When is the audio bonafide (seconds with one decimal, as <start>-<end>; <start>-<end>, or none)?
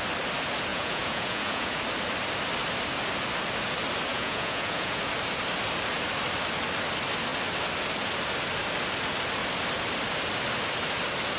0.0-0.7; 1.8-4.1; 5.0-11.4